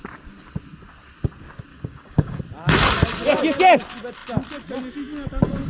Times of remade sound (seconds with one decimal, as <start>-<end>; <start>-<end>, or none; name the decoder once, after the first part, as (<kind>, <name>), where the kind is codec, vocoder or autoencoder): 1.7-2.4 (codec, DAC)